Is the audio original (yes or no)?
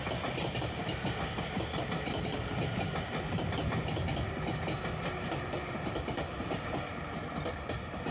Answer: yes